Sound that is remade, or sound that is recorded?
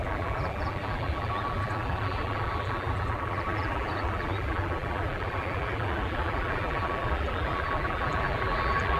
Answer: remade